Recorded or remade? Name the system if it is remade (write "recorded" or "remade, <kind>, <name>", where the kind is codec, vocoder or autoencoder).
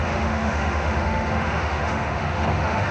remade, autoencoder, DAC-VAE